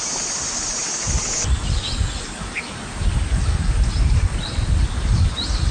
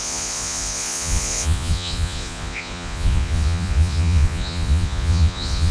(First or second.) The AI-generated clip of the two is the second